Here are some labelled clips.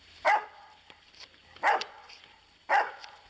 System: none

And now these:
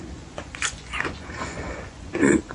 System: vocoder, Vocos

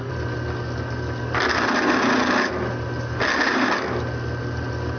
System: none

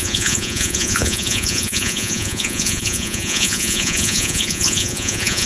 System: vocoder, Vocos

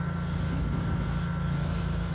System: none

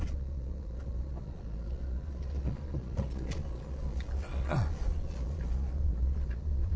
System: vocoder, Vocos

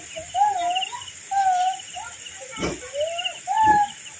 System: none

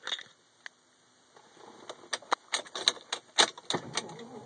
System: none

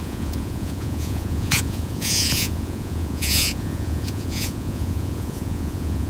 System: vocoder, Vocos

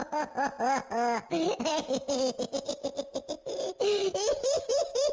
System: none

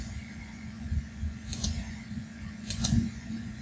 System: vocoder, Vocos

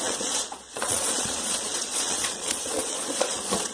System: vocoder, Vocos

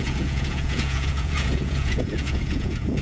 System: vocoder, Vocos